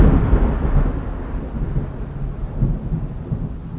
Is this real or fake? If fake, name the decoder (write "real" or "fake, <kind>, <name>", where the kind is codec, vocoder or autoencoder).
real